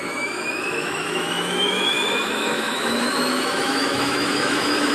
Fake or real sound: fake